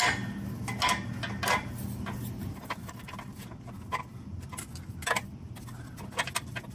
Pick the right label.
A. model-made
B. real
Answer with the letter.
B